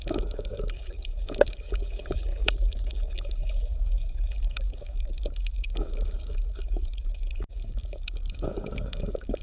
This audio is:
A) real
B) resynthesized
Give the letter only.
B